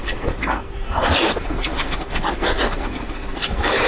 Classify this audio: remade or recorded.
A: remade